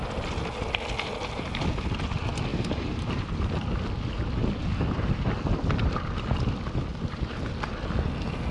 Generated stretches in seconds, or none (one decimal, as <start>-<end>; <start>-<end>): 2.5-3.8; 6.9-7.4